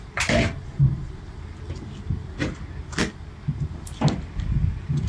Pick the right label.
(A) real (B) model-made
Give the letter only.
A